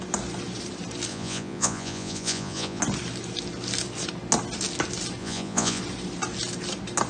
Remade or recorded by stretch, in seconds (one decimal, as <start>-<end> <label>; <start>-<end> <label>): 0.0-1.1 recorded; 1.1-2.8 remade; 2.8-5.2 recorded; 5.2-5.8 remade; 5.8-7.1 recorded